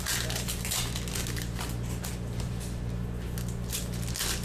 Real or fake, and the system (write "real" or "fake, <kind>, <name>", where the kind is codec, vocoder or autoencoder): real